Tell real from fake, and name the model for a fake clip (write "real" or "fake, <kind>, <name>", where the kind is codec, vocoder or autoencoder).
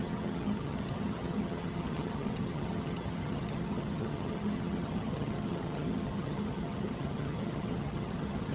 fake, vocoder, HiFi-GAN